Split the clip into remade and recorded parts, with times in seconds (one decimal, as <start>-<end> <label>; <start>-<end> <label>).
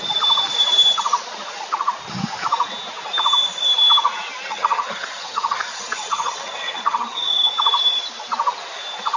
0.0-4.5 recorded; 4.5-7.5 remade; 7.5-9.2 recorded